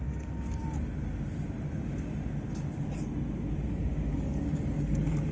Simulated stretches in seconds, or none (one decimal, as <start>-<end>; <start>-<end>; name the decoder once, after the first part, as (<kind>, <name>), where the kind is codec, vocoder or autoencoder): 0.0-0.6 (codec, DAC); 3.7-5.3

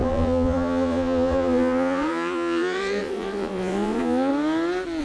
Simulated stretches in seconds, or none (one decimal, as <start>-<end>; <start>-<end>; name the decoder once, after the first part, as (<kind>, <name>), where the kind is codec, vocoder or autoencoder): 0.0-4.3 (vocoder, Vocos)

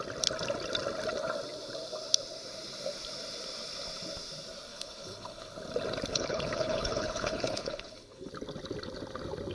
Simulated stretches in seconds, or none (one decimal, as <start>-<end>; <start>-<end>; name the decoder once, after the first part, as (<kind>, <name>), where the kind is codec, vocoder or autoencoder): 4.7-5.5 (codec, HILCodec); 6.1-8.3